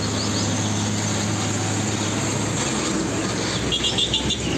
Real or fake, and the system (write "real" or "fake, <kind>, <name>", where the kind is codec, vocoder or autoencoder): real